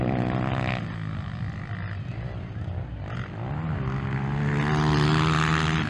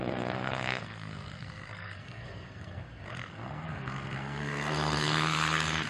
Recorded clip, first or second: first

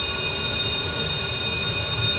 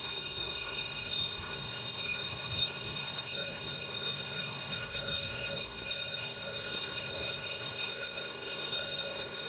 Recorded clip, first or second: first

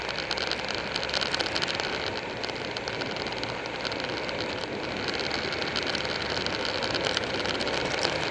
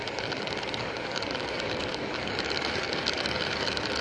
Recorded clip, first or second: first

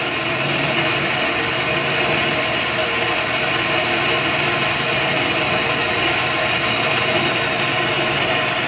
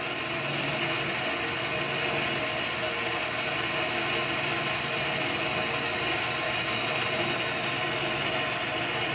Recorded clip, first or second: second